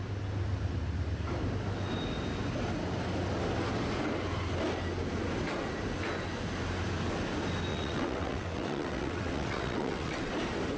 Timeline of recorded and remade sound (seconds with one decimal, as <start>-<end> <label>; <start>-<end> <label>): 0.0-7.7 recorded; 7.7-10.3 remade; 10.3-10.8 recorded